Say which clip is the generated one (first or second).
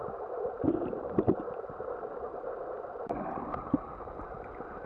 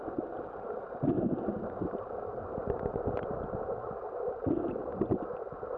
first